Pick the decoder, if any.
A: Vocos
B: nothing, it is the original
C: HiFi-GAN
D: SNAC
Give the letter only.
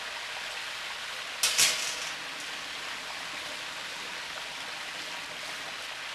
B